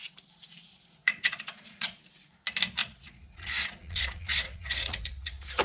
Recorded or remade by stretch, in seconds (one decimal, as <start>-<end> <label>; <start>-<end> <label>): 0.0-1.0 recorded; 1.0-2.0 remade; 2.0-2.8 recorded; 2.8-5.6 remade